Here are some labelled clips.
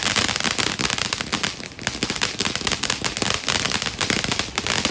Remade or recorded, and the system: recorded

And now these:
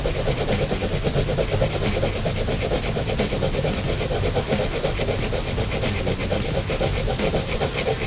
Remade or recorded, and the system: recorded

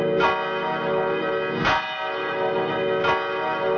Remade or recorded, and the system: recorded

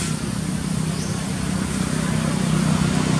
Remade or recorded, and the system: recorded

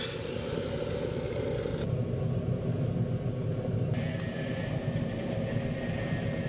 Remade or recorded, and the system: recorded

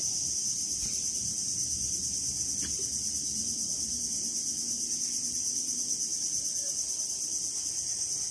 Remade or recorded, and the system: recorded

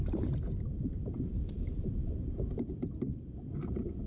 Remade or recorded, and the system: remade, vocoder, BigVGAN v2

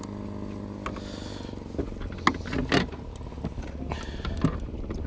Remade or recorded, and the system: recorded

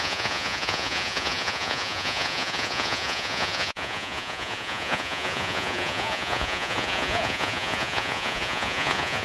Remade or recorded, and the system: remade, vocoder, Vocos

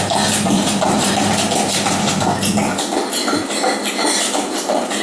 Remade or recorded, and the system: recorded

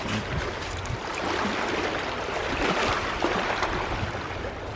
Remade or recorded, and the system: recorded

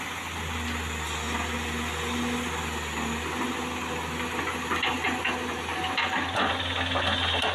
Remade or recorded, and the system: recorded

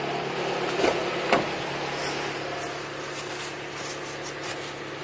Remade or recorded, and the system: recorded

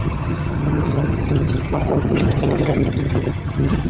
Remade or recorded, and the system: remade, vocoder, HiFi-GAN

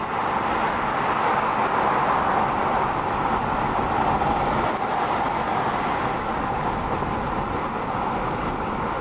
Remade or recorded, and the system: recorded